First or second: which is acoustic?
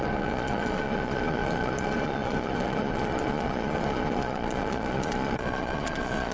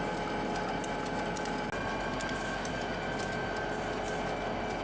second